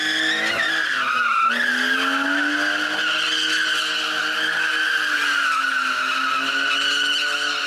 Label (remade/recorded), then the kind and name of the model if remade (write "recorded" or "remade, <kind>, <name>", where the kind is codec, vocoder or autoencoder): recorded